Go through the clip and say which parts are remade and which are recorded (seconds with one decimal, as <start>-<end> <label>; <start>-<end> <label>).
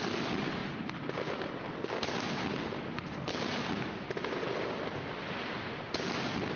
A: 0.0-0.6 recorded; 0.6-4.6 remade; 4.6-6.6 recorded